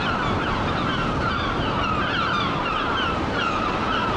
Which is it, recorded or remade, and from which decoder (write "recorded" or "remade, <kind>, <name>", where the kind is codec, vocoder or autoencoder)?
remade, vocoder, BigVGAN v2